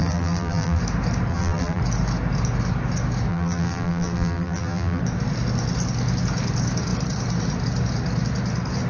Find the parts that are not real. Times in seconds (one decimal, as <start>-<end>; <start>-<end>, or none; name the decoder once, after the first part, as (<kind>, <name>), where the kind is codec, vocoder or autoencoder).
0.0-0.8 (vocoder, BigVGAN v2); 1.3-1.8; 3.3-5.0